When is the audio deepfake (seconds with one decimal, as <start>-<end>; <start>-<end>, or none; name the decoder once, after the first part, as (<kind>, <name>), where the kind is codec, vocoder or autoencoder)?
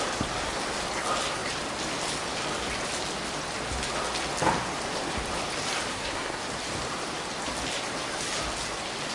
5.9-6.4 (codec, SNAC)